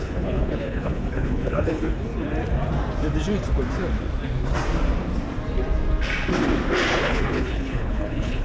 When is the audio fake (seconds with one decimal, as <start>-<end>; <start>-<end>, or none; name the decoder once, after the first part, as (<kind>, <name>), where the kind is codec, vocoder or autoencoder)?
0.0-2.1 (codec, HILCodec); 6.9-8.4